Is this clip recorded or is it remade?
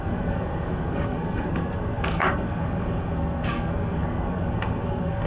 remade